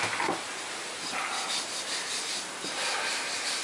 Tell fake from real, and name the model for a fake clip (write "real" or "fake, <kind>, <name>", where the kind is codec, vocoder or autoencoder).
real